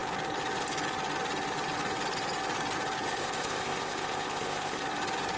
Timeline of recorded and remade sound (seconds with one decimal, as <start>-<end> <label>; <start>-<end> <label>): 0.0-3.1 recorded; 3.1-4.8 remade; 4.8-5.4 recorded